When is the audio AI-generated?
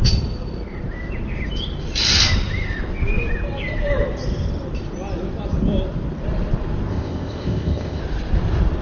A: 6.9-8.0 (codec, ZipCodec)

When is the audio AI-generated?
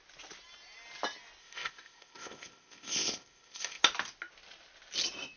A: 1.4-3.8 (codec, ZipCodec)